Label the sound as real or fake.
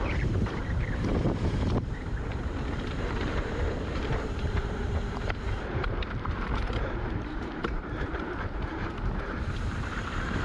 fake